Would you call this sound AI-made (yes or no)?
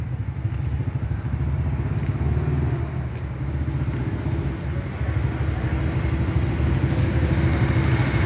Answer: no